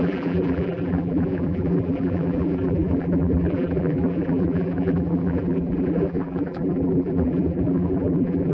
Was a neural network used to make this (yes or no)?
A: yes